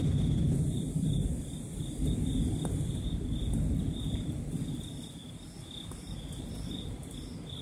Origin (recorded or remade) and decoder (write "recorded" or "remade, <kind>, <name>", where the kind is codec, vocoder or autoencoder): recorded